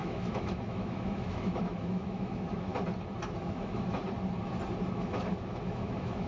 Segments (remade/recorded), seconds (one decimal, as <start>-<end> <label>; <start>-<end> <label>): 0.0-2.7 remade; 2.7-3.4 recorded; 3.4-4.0 remade; 4.0-4.9 recorded; 4.9-6.3 remade